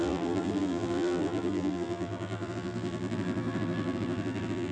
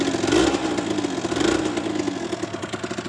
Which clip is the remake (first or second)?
first